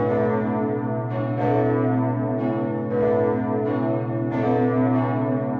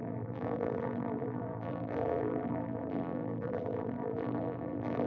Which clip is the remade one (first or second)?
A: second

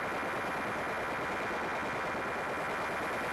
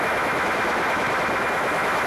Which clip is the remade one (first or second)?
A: second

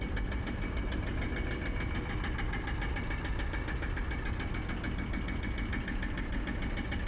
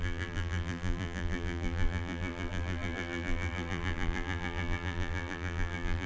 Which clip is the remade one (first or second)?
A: second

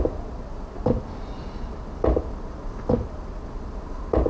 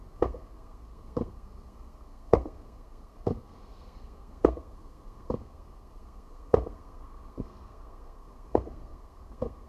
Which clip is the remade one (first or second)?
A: second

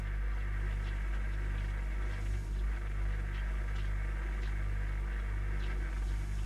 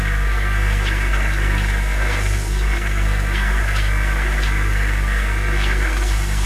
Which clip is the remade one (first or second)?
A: second